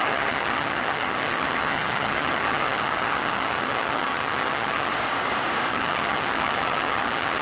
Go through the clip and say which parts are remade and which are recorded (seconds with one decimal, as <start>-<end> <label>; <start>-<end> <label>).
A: 0.0-4.9 remade; 4.9-5.7 recorded; 5.7-7.4 remade